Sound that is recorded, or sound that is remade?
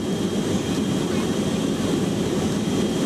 recorded